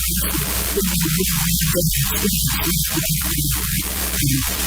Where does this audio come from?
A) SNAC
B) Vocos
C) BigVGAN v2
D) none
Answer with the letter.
C